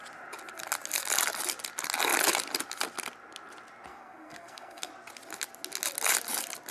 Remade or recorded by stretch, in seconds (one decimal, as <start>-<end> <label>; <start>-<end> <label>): 0.0-3.9 recorded; 3.9-4.9 remade; 4.9-6.7 recorded